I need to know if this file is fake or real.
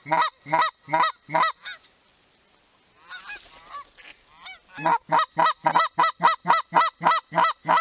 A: real